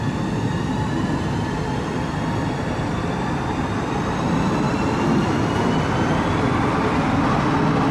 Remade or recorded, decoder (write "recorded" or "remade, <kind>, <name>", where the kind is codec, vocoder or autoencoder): recorded